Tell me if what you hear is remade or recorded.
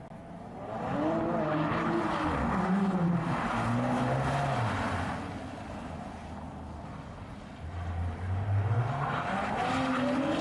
recorded